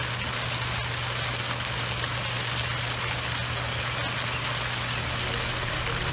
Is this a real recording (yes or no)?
yes